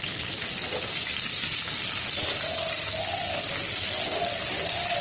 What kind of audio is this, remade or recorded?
recorded